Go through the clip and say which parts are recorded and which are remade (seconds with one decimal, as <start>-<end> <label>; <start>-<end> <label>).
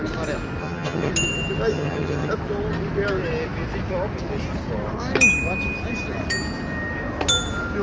0.0-0.6 recorded; 0.6-1.1 remade; 1.1-1.7 recorded; 1.7-2.3 remade; 2.3-7.8 recorded